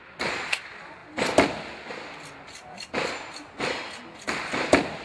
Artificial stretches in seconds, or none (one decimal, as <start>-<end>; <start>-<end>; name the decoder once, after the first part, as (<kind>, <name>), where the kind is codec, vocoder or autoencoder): none